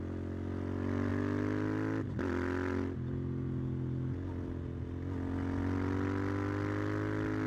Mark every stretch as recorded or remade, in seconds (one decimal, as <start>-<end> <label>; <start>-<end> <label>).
0.0-7.5 recorded